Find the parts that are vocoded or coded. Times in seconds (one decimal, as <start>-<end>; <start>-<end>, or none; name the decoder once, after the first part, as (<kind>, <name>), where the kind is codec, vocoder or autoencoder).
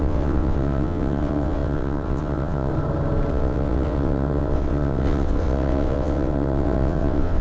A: 0.0-2.7 (vocoder, WaveNeXt); 3.3-7.4